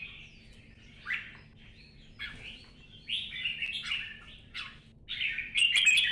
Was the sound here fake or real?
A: real